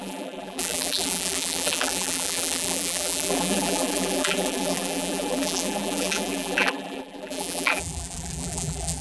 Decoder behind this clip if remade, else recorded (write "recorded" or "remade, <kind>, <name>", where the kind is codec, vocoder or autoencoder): remade, vocoder, BigVGAN v2